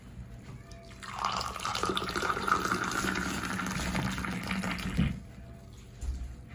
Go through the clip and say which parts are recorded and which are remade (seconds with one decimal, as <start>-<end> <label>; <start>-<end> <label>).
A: 0.0-1.7 recorded; 1.7-2.5 remade; 2.5-6.5 recorded